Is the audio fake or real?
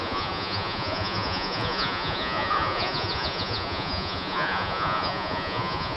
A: fake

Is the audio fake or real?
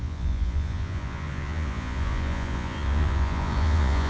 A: fake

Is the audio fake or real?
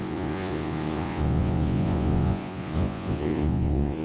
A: fake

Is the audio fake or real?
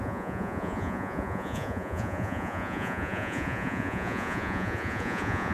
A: fake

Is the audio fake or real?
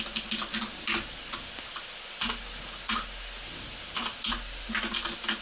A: real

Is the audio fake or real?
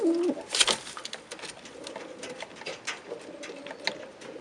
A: real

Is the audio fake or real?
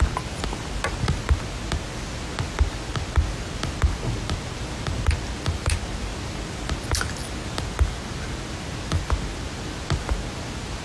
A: real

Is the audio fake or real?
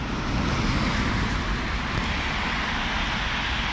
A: real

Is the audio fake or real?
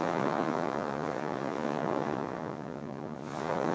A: fake